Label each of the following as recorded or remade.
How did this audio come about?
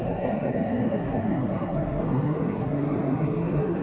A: remade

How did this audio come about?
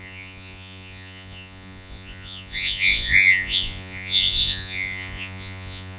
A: remade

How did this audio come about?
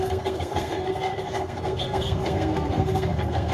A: remade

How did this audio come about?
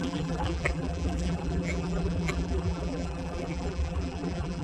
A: remade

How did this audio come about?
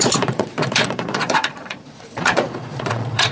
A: remade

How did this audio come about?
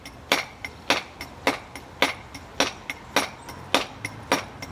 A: recorded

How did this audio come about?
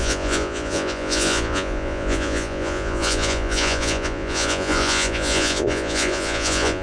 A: remade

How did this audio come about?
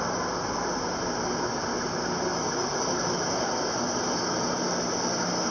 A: recorded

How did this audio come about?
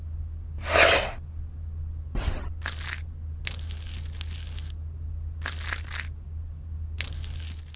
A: recorded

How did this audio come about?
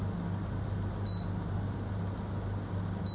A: recorded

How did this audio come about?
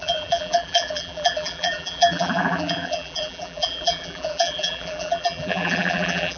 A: remade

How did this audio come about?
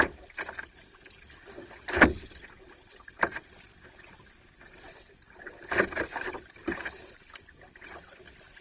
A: recorded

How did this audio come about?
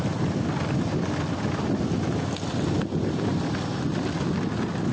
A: recorded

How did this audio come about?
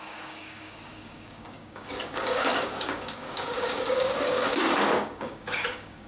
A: remade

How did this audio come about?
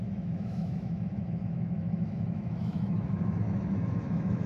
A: remade